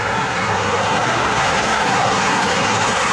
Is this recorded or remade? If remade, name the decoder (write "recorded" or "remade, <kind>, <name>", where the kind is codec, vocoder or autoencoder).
remade, codec, SNAC